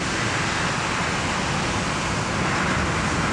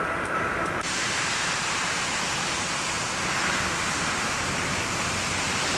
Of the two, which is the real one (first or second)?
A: first